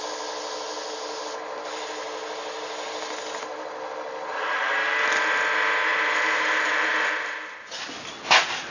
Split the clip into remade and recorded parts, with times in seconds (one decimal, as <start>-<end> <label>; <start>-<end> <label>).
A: 0.0-8.7 recorded